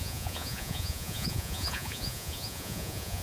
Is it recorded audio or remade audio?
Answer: remade